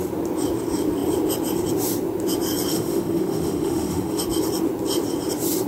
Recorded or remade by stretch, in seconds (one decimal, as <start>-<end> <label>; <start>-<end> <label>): 0.0-2.7 recorded; 2.7-4.2 remade; 4.2-5.7 recorded